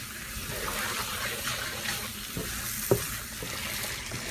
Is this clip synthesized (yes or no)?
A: no